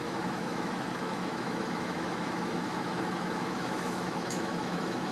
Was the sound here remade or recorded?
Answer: remade